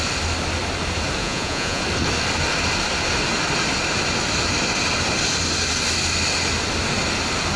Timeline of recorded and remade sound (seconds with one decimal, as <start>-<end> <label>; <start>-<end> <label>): 0.0-1.2 recorded; 1.2-1.8 remade; 1.8-7.6 recorded